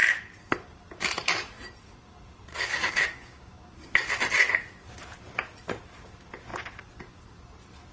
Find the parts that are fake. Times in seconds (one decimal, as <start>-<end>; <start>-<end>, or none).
2.5-3.5